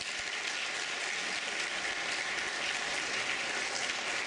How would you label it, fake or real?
real